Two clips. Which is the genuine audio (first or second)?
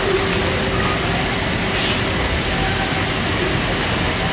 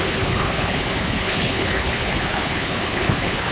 first